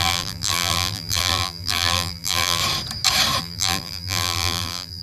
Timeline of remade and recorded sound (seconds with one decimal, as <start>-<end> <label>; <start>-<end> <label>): 0.0-2.6 remade; 2.6-3.4 recorded; 3.4-5.0 remade